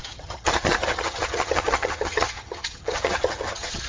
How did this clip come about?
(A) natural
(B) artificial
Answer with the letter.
B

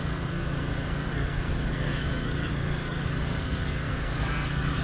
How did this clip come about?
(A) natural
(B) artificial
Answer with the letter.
B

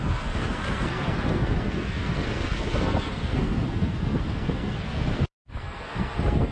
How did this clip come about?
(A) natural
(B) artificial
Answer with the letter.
B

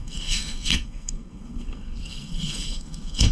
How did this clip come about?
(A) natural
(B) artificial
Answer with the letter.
B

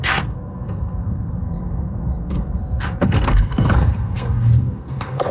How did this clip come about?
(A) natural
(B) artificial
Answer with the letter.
B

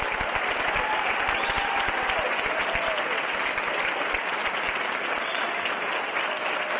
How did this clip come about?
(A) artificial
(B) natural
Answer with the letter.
B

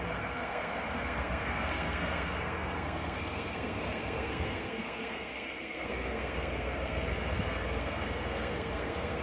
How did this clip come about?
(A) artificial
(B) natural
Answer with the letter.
A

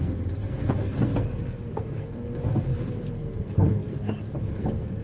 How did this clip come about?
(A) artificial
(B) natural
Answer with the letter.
A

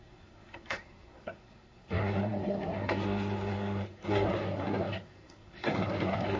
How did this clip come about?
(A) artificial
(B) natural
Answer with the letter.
A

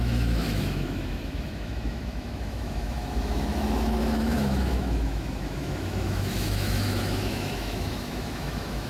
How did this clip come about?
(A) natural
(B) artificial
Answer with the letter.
B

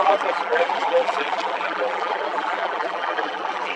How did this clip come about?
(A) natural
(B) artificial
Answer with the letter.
B